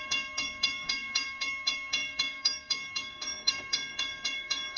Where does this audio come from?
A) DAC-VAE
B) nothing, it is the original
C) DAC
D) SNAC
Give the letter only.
C